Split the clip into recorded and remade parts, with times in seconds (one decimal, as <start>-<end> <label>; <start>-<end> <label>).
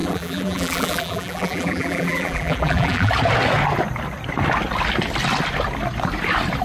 0.0-3.1 remade; 3.1-6.6 recorded